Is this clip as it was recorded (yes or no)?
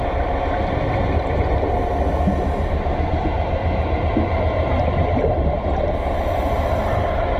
no